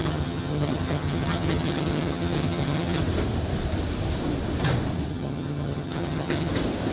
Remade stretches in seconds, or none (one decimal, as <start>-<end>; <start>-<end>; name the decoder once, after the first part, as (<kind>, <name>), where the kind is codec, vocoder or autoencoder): 0.0-3.0 (vocoder, HiFi-GAN); 5.1-6.5